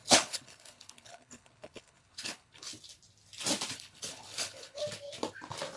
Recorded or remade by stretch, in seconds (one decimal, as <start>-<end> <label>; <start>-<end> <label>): 0.0-2.7 remade; 2.7-3.7 recorded; 3.7-4.8 remade; 4.8-5.8 recorded